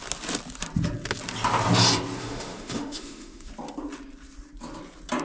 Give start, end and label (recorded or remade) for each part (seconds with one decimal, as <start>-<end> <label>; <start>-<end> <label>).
0.0-2.2 recorded; 2.2-3.5 remade; 3.5-5.2 recorded